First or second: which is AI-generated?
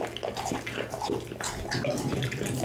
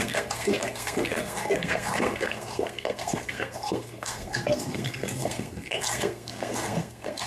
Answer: second